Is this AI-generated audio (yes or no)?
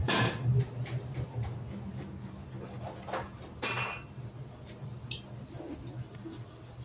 no